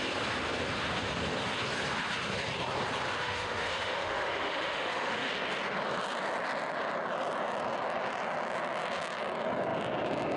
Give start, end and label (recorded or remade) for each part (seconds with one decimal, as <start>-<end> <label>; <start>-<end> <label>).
0.0-3.2 recorded; 3.2-5.3 remade; 5.3-10.4 recorded

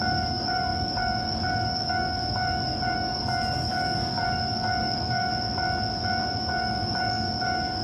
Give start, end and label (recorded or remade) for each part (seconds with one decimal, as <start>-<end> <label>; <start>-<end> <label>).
0.0-5.3 remade; 5.3-6.2 recorded; 6.2-7.8 remade

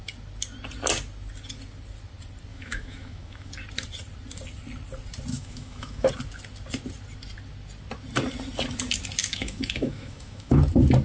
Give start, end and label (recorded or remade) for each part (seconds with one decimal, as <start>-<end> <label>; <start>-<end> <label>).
0.0-2.5 recorded; 2.5-3.5 remade; 3.5-5.3 recorded; 5.3-6.1 remade; 6.1-9.2 recorded; 9.2-10.6 remade; 10.6-11.0 recorded

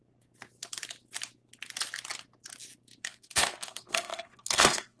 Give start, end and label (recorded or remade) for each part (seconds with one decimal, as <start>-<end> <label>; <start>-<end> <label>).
0.0-3.0 recorded; 3.0-5.0 remade